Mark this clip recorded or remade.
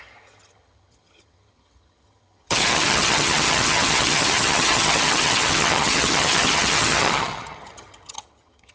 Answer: remade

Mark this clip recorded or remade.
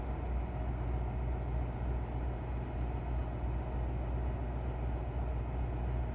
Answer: recorded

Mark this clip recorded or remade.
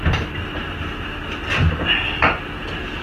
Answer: recorded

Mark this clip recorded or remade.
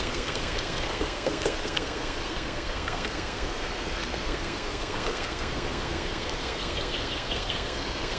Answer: remade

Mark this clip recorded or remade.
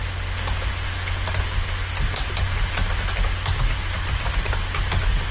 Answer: recorded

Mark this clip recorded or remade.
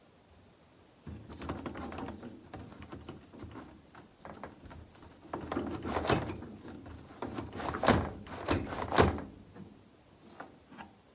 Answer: recorded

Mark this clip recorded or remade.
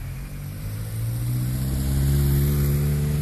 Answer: recorded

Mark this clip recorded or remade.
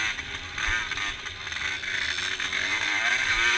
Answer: recorded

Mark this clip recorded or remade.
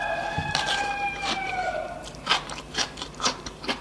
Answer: remade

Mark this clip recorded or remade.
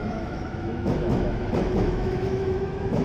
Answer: remade